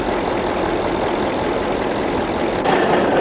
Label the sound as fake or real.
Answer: real